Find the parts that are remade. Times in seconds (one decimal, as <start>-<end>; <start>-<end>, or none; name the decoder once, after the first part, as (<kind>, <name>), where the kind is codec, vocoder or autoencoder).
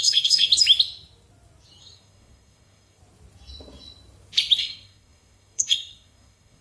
0.0-0.5 (codec, SNAC); 1.8-3.0; 4.6-6.6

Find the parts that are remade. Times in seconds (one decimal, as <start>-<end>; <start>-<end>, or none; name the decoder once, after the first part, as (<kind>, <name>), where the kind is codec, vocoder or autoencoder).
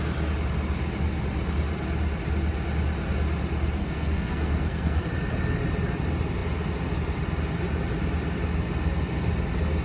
3.8-5.0 (codec, SNAC)